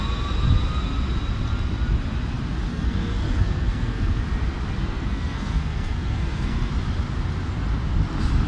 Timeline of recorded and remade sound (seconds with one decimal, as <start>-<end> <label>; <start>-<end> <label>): 0.0-2.7 recorded; 2.7-4.2 remade; 4.2-4.8 recorded; 4.8-6.7 remade; 6.7-8.5 recorded